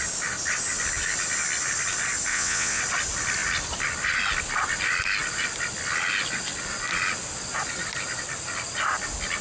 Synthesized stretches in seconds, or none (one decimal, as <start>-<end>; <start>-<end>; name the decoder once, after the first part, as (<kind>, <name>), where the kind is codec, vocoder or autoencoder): 2.3-2.8 (vocoder, WaveNeXt)